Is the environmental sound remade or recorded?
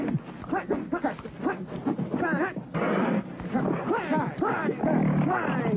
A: recorded